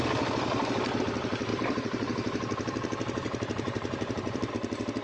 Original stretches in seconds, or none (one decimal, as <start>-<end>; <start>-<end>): 0.0-1.5; 4.5-5.0